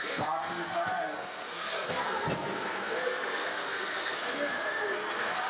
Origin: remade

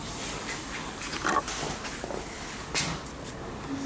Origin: recorded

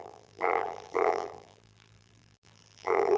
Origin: remade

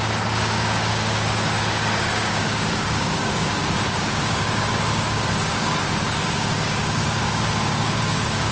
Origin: remade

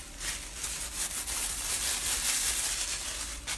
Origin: recorded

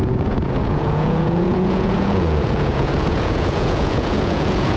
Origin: remade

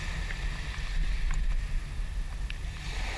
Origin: recorded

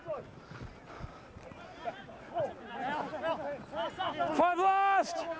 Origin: recorded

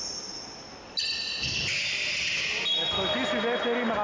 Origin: recorded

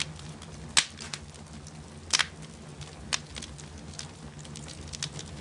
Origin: recorded